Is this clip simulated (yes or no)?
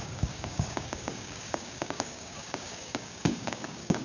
yes